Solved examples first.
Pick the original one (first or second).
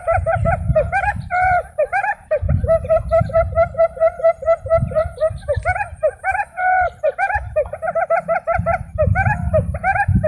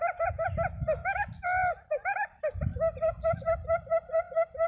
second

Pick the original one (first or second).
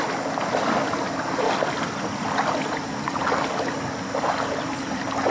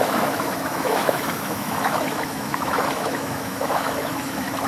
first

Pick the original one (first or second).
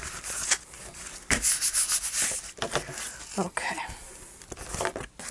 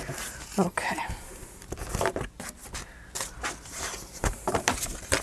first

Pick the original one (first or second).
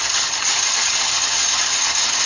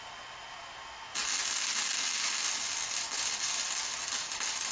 second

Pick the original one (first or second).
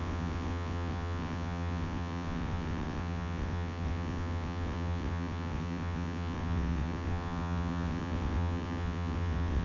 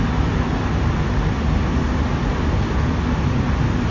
second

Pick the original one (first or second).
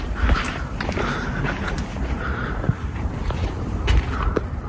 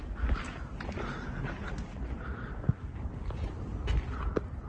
second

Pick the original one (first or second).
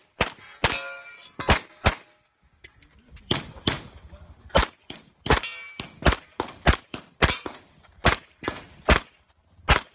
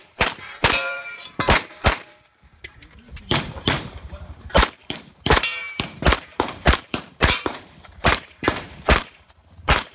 first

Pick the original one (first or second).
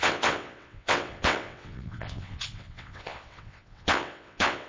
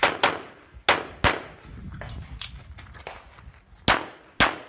second